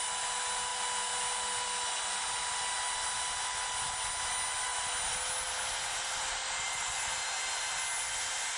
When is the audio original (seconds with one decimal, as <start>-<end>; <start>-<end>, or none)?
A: 0.0-8.6